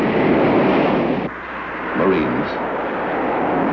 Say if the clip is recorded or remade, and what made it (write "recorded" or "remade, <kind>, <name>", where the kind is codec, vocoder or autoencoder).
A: recorded